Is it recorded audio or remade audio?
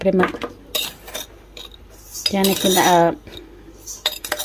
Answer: recorded